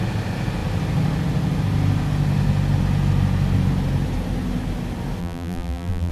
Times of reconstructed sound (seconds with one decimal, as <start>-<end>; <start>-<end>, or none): 5.2-6.1